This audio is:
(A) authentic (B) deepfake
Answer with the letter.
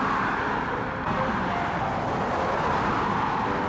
A